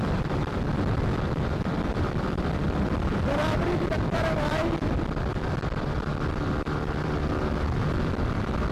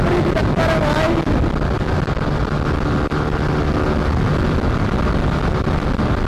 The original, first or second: second